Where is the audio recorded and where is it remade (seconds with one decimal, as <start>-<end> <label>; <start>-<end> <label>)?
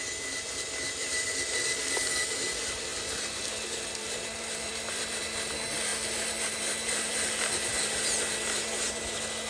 0.0-1.0 recorded; 1.0-2.1 remade; 2.1-2.9 recorded; 2.9-5.2 remade; 5.2-5.9 recorded; 5.9-7.1 remade; 7.1-9.5 recorded